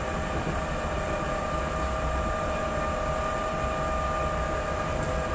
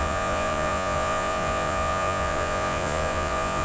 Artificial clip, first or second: second